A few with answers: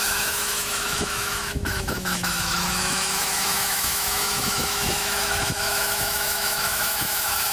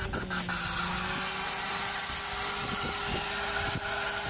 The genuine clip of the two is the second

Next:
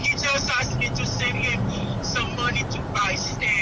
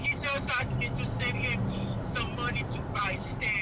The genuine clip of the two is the second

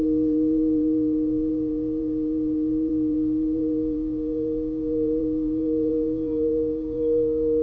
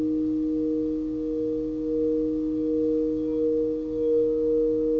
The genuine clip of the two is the second